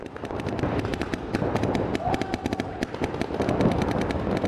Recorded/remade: recorded